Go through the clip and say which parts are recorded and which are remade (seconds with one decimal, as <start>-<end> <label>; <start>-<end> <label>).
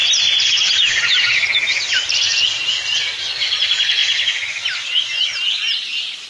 0.0-6.3 recorded